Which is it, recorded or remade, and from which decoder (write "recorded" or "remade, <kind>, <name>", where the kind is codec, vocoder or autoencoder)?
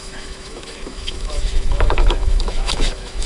remade, autoencoder, DAC-VAE